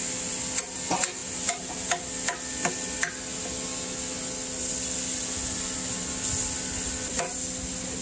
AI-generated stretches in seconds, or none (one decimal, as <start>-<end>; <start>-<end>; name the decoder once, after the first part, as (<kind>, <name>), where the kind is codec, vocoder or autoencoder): none